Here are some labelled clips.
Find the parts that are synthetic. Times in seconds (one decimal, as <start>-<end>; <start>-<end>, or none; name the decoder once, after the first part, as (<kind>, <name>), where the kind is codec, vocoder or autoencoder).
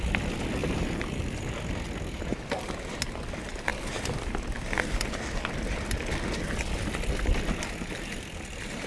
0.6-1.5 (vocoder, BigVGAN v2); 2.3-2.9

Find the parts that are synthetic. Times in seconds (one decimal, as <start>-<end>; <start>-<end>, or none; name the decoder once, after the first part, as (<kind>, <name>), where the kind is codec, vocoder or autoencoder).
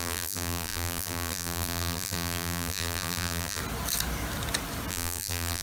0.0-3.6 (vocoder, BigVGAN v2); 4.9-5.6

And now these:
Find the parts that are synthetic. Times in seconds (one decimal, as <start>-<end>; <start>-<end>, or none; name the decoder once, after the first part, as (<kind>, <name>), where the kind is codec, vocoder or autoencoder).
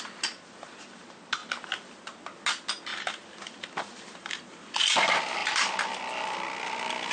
2.9-4.4 (vocoder, BigVGAN v2); 5.4-6.0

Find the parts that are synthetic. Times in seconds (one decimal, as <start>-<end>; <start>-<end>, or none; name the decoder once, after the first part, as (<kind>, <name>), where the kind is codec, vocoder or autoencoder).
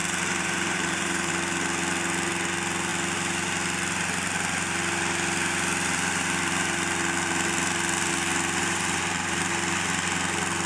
0.0-1.3 (vocoder, BigVGAN v2); 8.6-9.4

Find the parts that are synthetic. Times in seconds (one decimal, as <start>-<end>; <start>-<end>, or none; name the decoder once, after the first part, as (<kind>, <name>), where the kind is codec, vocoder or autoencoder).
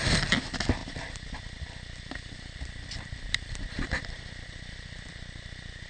0.0-5.9 (vocoder, BigVGAN v2)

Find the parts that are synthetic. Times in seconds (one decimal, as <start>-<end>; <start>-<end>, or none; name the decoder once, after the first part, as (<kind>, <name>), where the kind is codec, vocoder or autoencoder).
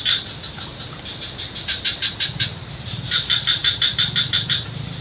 0.0-0.7 (vocoder, BigVGAN v2); 1.7-3.6; 4.4-5.0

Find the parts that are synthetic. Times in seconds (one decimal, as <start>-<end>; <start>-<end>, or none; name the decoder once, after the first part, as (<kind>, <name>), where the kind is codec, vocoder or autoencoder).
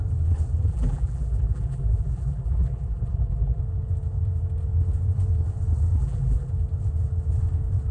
0.7-3.6 (vocoder, BigVGAN v2); 6.0-6.5